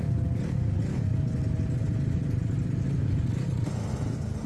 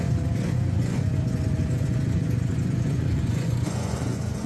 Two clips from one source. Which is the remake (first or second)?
second